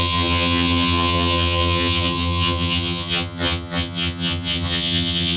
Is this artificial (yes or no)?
yes